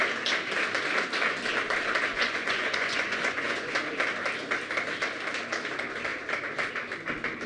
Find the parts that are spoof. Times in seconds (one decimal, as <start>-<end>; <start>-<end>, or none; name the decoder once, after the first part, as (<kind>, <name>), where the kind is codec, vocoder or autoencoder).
2.1-3.8 (vocoder, Vocos)